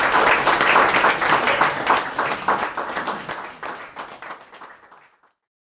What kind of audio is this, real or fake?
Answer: real